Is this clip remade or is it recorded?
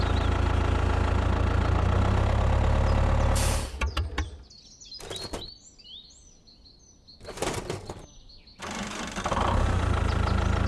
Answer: recorded